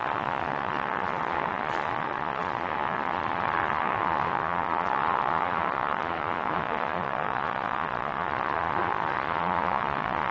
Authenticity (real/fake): fake